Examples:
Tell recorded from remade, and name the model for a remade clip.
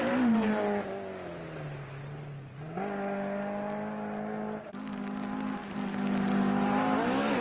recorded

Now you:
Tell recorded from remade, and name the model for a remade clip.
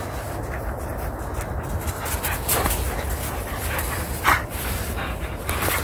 recorded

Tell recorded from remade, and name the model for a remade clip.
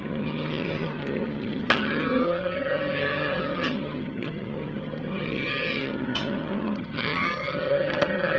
remade, vocoder, HiFi-GAN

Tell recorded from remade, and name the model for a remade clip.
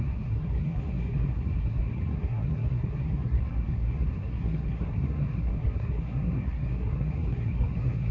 remade, codec, SNAC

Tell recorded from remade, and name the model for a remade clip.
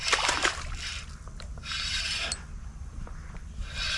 recorded